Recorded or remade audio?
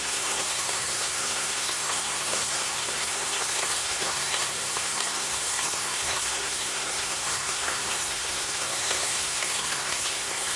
remade